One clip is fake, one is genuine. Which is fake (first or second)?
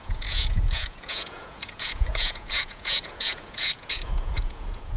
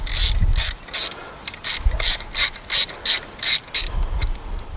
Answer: first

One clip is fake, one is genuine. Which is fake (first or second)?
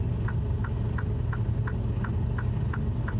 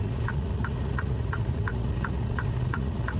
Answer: second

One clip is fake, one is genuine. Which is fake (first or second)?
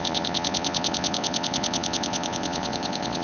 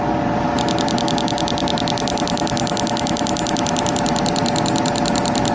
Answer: first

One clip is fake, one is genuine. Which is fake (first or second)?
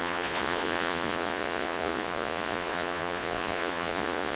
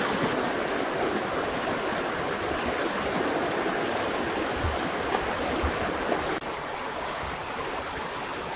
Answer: first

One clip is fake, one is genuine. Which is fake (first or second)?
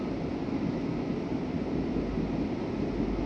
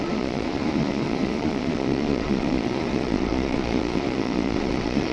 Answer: second